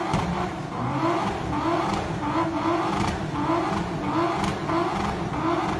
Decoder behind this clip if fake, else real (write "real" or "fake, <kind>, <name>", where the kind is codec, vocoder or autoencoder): real